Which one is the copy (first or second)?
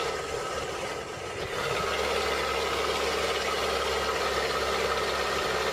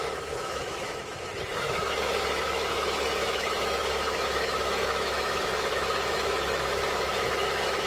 second